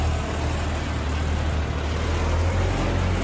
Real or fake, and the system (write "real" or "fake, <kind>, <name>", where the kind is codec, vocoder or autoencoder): real